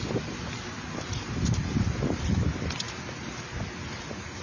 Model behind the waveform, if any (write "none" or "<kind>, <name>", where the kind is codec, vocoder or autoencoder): none